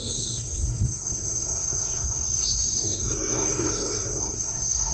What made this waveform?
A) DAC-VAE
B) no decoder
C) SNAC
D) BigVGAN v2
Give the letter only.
C